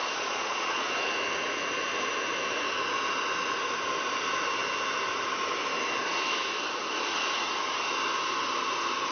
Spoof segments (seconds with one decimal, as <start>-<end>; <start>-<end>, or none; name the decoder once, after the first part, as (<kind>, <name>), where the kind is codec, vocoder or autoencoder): 0.0-0.9 (vocoder, Vocos)